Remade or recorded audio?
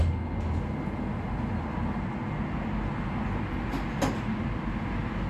recorded